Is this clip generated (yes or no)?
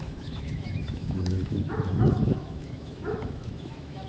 yes